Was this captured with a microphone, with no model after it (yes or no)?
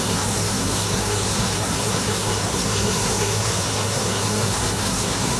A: no